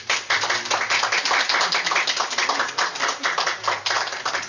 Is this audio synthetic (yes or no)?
no